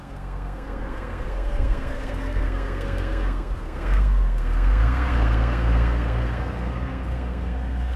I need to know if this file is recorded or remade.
remade